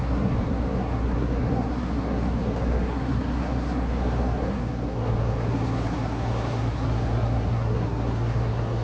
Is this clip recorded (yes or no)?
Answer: no